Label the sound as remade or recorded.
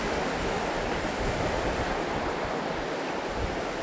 recorded